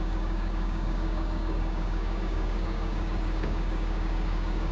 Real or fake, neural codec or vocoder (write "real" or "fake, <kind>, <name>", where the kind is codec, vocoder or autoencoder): fake, codec, DAC